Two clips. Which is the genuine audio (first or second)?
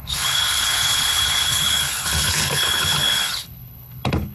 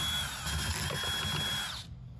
second